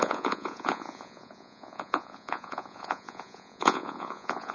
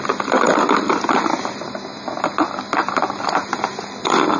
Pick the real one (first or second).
second